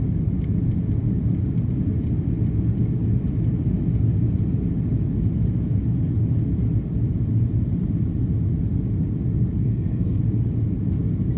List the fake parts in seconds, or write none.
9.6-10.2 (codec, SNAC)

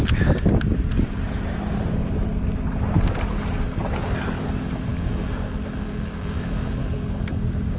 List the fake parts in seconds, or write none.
none

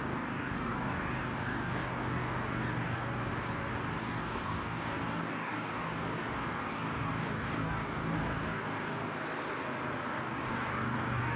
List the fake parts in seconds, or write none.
0.0-3.3 (codec, DAC); 4.0-9.0; 10.1-11.4

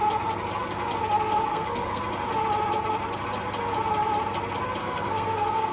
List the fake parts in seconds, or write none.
1.5-2.0 (codec, SNAC); 4.8-5.7